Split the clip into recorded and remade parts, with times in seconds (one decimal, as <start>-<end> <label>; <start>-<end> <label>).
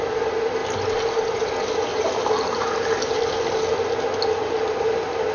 0.0-1.9 recorded; 1.9-3.0 remade; 3.0-5.3 recorded